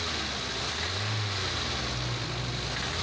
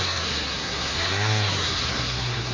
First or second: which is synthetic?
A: second